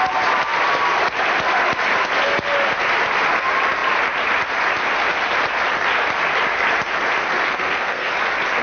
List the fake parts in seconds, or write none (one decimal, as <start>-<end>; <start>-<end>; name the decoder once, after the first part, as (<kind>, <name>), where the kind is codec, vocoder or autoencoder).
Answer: 7.5-8.1 (codec, SNAC)